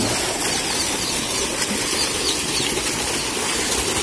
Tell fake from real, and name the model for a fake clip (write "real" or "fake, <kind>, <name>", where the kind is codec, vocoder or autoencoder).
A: real